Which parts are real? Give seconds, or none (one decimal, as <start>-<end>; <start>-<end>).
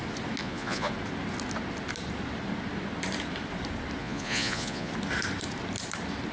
0.0-0.4; 0.9-4.0; 4.9-6.3